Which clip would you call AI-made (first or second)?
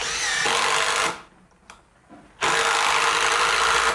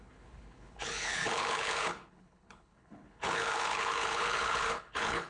second